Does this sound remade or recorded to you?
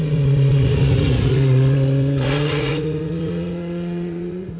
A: remade